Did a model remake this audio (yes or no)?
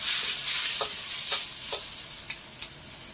no